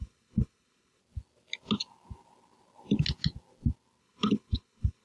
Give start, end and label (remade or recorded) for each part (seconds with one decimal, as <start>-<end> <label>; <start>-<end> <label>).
0.0-1.0 remade; 1.0-4.0 recorded; 4.0-5.0 remade